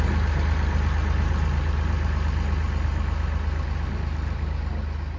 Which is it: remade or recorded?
recorded